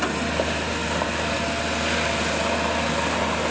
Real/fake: real